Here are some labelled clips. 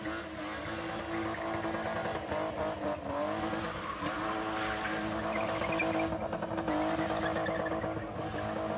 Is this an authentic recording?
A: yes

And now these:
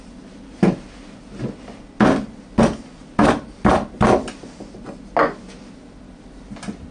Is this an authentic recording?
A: yes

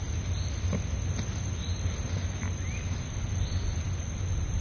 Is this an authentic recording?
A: yes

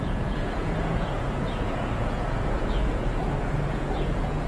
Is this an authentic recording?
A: no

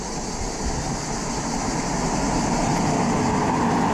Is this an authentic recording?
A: yes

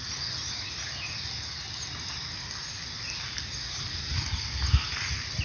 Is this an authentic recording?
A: yes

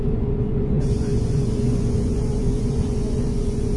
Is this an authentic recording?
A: no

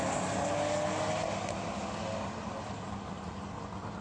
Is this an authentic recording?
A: yes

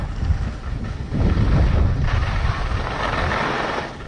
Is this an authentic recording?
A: yes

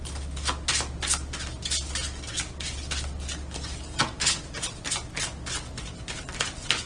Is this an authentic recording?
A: yes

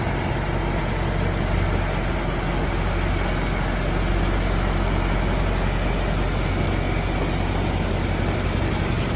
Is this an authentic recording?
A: yes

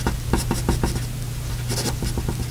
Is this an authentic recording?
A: yes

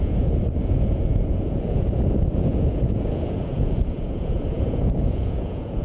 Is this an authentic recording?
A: no